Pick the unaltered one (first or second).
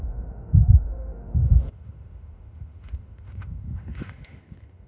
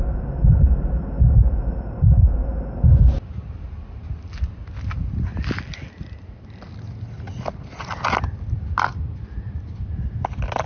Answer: second